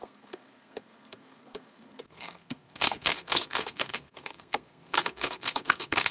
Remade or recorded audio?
remade